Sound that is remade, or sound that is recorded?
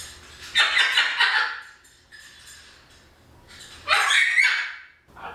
recorded